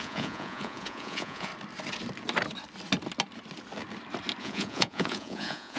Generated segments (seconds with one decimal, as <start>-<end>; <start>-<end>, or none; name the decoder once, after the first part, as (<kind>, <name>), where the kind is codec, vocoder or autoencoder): 0.0-1.5 (vocoder, Vocos); 4.4-5.8